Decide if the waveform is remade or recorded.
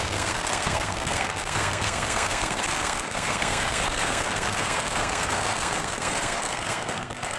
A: remade